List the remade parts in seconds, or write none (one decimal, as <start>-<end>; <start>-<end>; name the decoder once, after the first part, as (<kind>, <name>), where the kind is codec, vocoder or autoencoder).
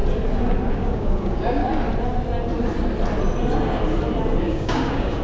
0.7-1.6 (codec, DAC); 4.4-5.2